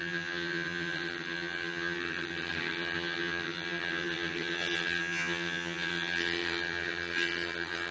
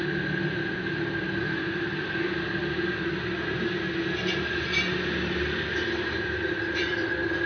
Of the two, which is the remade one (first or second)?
first